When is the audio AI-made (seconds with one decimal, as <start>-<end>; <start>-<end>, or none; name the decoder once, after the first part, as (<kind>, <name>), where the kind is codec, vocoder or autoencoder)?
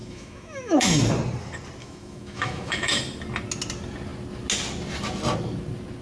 0.0-1.0 (autoencoder, DAC-VAE); 1.8-3.0